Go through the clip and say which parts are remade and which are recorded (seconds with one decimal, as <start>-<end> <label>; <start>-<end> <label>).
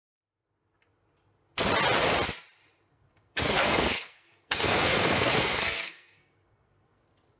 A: 0.0-2.9 recorded; 2.9-7.4 remade